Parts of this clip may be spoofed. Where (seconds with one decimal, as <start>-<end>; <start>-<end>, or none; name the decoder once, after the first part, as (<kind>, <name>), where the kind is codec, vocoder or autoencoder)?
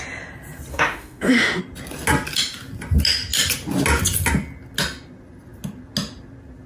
0.7-1.6 (autoencoder, DAC-VAE)